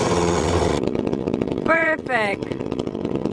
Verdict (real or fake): fake